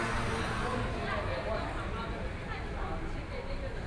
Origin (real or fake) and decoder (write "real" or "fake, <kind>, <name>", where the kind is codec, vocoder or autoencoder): real